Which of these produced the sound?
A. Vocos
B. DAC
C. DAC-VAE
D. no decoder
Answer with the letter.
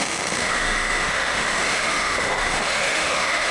C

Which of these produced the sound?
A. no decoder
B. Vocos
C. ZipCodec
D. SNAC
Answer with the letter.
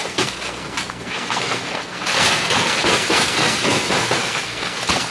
D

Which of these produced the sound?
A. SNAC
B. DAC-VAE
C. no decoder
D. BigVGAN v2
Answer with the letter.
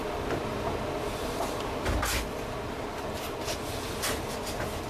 D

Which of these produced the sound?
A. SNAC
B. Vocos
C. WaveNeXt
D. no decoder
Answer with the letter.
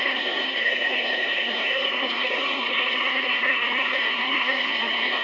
A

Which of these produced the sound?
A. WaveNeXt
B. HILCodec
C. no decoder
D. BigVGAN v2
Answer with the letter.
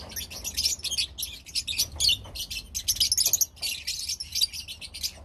C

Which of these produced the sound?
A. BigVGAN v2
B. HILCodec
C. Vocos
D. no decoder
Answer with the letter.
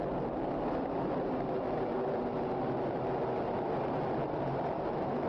D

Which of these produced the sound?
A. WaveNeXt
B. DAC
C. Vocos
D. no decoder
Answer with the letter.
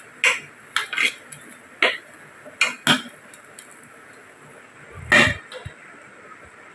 D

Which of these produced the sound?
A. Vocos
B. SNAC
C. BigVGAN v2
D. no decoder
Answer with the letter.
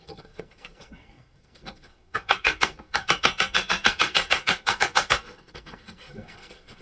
B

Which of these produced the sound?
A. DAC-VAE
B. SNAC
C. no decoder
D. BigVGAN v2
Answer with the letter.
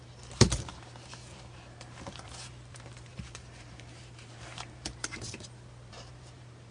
D